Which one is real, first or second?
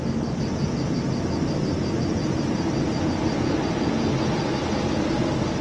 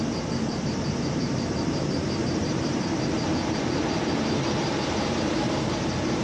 first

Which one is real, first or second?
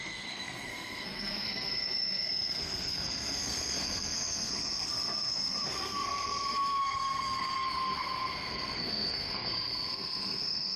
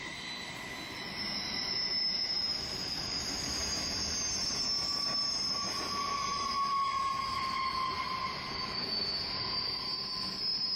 second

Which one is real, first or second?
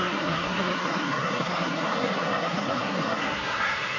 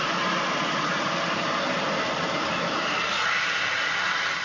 second